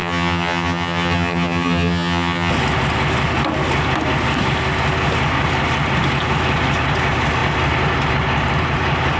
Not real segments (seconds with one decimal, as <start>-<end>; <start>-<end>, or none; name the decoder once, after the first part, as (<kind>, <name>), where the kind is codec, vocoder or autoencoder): 0.0-2.5 (vocoder, HiFi-GAN)